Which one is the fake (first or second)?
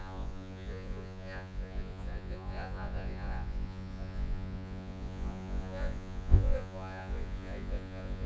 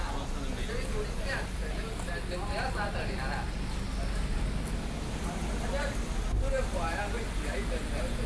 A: first